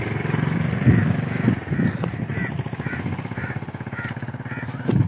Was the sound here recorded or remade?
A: recorded